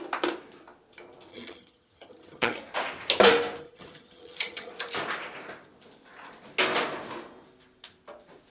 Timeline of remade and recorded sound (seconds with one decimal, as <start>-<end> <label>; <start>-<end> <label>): 0.0-1.3 recorded; 1.3-2.6 remade; 2.6-3.6 recorded; 3.6-4.7 remade; 4.7-8.5 recorded